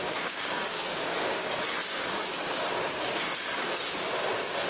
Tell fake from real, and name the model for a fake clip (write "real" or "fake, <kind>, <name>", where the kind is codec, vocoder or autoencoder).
fake, codec, DAC